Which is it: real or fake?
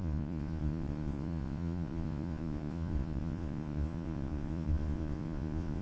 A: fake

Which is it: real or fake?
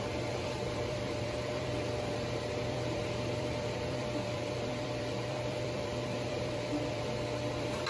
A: fake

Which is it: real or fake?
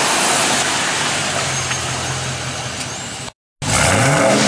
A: real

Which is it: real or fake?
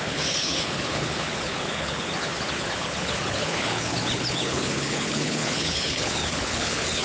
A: fake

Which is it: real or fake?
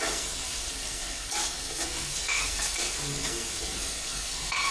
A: fake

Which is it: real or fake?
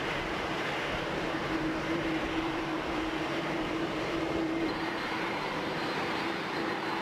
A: fake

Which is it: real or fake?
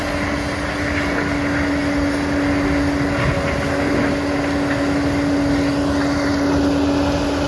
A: real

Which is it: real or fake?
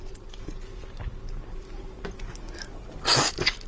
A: real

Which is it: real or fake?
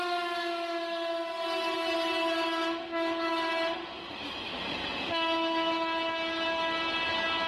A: real